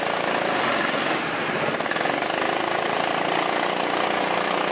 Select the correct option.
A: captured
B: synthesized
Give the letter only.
B